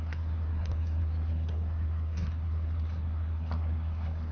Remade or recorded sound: remade